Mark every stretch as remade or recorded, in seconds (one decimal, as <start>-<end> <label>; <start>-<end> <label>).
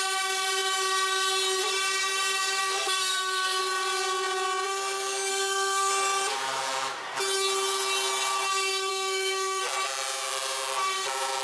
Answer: 0.0-2.6 recorded; 2.6-3.6 remade; 3.6-5.3 recorded; 5.3-5.9 remade; 5.9-8.9 recorded; 8.9-9.6 remade; 9.6-11.4 recorded